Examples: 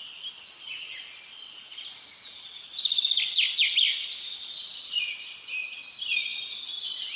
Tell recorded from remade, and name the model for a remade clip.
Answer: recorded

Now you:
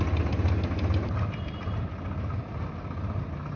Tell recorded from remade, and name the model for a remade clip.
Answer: recorded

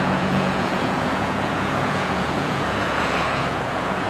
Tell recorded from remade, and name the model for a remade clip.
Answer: remade, vocoder, Vocos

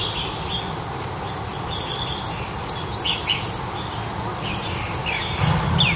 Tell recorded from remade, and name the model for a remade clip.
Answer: recorded